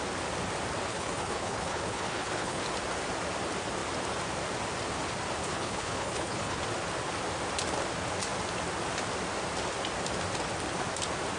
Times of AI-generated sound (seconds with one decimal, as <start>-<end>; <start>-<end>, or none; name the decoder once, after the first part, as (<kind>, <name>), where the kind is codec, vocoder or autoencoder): 0.9-2.6 (codec, HILCodec); 5.4-6.6